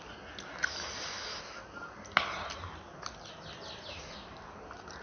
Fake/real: real